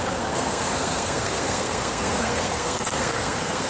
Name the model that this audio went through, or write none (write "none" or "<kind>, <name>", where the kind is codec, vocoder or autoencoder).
codec, SNAC